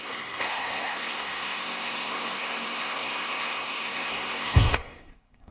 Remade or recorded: remade